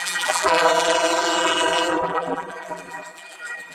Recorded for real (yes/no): no